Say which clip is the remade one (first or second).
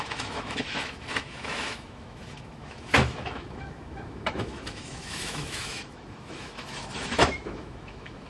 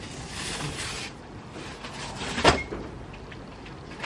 first